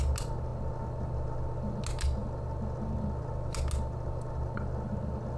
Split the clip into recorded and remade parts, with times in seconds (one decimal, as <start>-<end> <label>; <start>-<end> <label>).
0.0-5.4 recorded